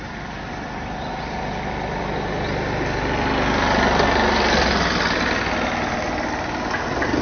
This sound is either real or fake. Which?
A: real